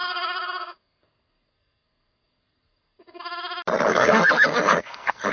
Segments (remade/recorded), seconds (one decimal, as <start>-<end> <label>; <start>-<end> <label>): 0.0-3.2 remade; 3.2-3.9 recorded; 3.9-5.3 remade

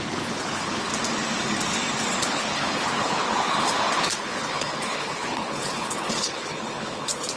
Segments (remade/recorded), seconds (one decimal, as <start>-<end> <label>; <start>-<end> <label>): 0.0-0.9 remade; 0.9-2.2 recorded; 2.2-7.4 remade

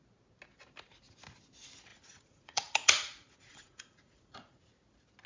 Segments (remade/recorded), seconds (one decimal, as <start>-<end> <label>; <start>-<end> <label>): 0.0-1.9 recorded; 1.9-4.7 remade; 4.7-5.3 recorded

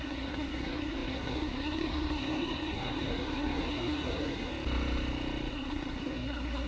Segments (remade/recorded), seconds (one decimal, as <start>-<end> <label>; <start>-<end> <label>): 0.0-4.5 remade; 4.5-5.5 recorded; 5.5-6.7 remade

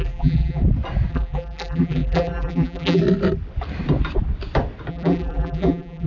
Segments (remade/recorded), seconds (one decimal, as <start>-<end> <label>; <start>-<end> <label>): 0.0-0.6 remade; 0.6-1.1 recorded; 1.1-3.0 remade; 3.0-4.9 recorded; 4.9-6.1 remade

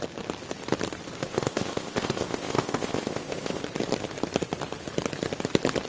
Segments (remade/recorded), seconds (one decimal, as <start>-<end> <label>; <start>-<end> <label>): 0.0-1.2 recorded; 1.2-3.6 remade; 3.6-5.9 recorded

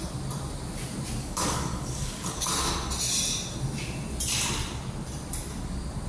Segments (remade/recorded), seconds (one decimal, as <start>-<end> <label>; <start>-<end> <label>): 0.0-1.2 recorded; 1.2-2.6 remade; 2.6-6.1 recorded